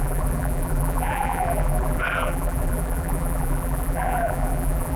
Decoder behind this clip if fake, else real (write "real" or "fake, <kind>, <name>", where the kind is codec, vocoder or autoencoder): fake, vocoder, BigVGAN v2